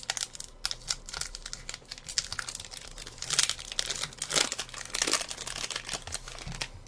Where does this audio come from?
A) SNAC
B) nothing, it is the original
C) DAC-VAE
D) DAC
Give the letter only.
B